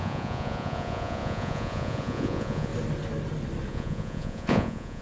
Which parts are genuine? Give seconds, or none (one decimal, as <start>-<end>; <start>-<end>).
2.7-3.7